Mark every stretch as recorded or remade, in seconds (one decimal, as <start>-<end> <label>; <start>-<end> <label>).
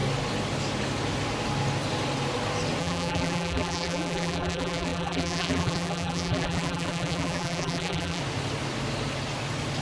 0.0-2.8 recorded; 2.8-8.2 remade; 8.2-9.8 recorded